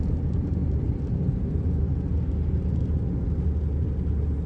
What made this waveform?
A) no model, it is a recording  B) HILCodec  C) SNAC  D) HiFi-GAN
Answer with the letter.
A